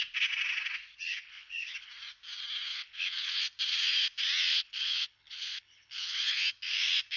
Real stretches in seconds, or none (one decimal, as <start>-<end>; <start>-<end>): 0.0-1.1; 1.9-2.7; 3.4-4.5; 6.4-7.2